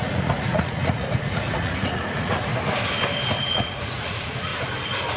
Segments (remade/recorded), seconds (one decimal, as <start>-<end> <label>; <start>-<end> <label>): 0.0-2.5 remade; 2.5-3.5 recorded; 3.5-4.5 remade; 4.5-5.2 recorded